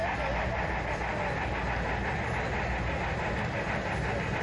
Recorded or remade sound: recorded